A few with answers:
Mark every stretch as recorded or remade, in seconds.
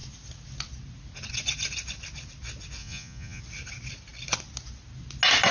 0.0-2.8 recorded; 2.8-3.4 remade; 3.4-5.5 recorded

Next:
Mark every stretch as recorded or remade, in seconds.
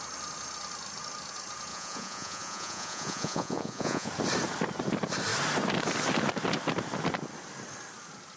0.0-1.7 recorded; 1.7-4.1 remade; 4.1-8.4 recorded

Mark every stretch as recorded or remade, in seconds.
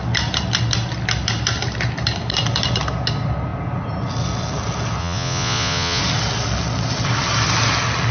0.0-5.0 recorded; 5.0-6.0 remade; 6.0-8.1 recorded